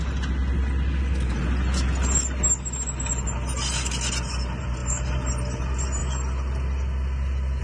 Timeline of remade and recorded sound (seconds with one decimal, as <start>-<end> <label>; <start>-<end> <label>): 0.0-7.6 recorded